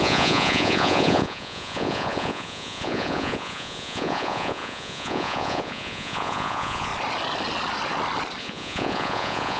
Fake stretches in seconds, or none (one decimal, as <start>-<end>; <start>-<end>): 0.0-6.9; 8.4-9.6